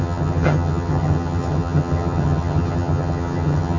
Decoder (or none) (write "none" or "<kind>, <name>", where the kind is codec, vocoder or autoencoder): vocoder, HiFi-GAN